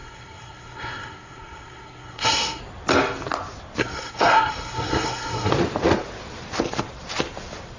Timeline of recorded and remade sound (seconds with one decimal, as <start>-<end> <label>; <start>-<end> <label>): 0.0-2.6 remade; 2.6-3.8 recorded; 3.8-5.5 remade; 5.5-7.8 recorded